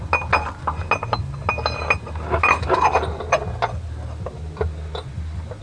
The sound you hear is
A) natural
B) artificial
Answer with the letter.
A